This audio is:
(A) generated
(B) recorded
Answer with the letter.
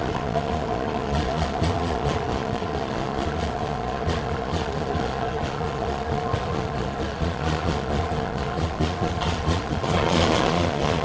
A